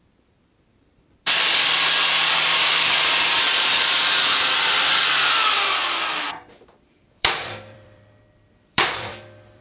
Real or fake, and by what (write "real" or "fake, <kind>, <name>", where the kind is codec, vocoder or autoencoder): fake, vocoder, BigVGAN v2